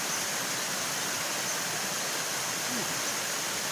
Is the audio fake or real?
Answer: real